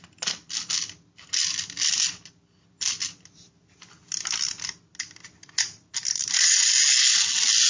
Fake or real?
real